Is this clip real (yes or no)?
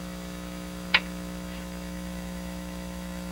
no